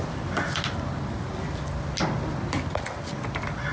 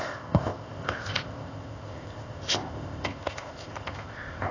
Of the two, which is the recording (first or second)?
first